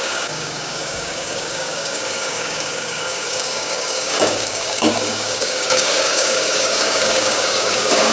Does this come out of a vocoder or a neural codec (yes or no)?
yes